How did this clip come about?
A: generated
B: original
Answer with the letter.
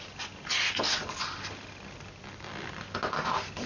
B